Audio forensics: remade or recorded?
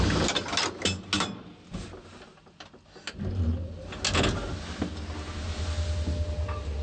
recorded